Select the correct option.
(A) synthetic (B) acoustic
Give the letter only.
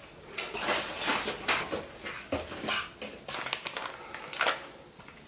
B